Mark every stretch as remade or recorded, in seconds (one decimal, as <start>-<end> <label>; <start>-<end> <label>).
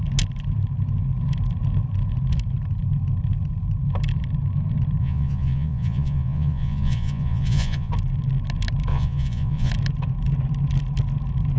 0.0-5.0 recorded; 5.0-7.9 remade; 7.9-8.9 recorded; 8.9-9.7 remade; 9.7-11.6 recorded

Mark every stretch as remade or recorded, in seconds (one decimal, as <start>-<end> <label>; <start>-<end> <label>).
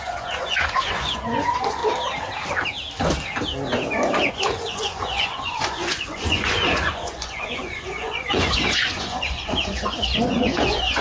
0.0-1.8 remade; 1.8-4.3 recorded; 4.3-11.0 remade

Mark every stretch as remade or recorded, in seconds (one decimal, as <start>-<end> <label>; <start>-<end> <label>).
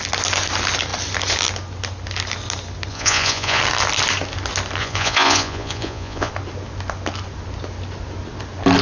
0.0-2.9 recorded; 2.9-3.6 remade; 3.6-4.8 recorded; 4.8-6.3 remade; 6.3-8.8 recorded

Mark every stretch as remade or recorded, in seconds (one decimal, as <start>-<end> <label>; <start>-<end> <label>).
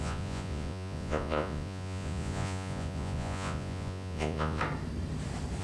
0.0-4.6 remade; 4.6-5.6 recorded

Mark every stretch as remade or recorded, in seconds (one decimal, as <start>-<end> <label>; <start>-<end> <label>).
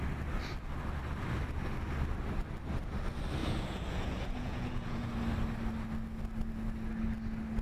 0.0-3.4 recorded; 3.4-5.1 remade; 5.1-7.6 recorded